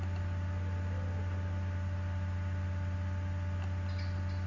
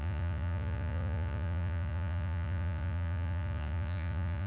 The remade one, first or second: second